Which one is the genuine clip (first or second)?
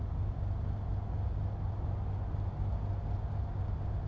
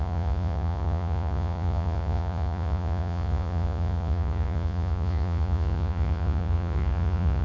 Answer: first